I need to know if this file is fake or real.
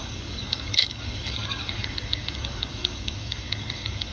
fake